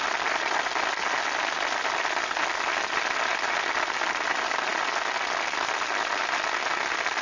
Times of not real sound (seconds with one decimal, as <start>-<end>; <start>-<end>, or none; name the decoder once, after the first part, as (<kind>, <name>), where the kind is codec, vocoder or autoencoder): none